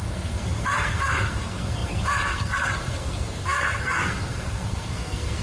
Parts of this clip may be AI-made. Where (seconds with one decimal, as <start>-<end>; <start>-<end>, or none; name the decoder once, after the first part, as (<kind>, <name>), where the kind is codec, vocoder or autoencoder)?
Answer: 0.0-5.4 (codec, SNAC)